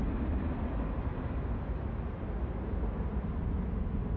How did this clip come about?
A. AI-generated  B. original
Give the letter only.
B